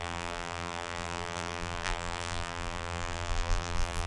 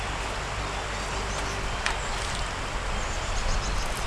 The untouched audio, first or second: second